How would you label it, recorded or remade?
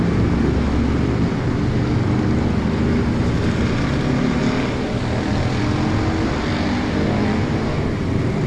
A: recorded